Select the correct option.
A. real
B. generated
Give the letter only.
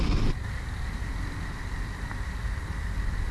A